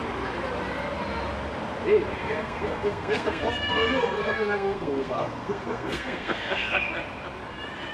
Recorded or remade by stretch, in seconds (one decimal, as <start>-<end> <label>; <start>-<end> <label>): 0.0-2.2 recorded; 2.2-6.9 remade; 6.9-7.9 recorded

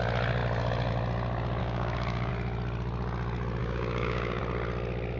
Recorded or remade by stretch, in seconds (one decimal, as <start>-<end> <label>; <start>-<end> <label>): 0.0-1.6 recorded; 1.6-2.3 remade; 2.3-3.6 recorded; 3.6-4.4 remade; 4.4-5.2 recorded

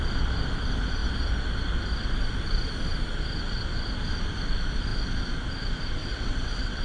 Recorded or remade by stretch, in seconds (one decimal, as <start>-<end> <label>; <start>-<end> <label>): 0.0-6.0 recorded; 6.0-6.8 remade

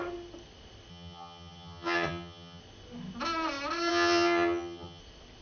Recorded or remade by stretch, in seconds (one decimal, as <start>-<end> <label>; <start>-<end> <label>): 0.0-0.9 recorded; 0.9-2.6 remade; 2.6-3.9 recorded; 3.9-5.0 remade; 5.0-5.4 recorded

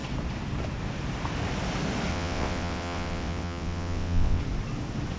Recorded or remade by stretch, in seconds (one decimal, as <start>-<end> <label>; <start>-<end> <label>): 0.0-2.1 recorded; 2.1-4.4 remade; 4.4-5.2 recorded

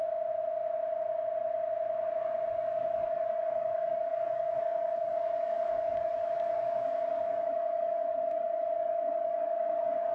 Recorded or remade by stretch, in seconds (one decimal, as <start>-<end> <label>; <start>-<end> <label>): 0.0-2.5 recorded; 2.5-10.1 remade